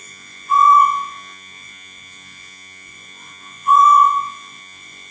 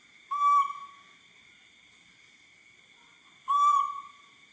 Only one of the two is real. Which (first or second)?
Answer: second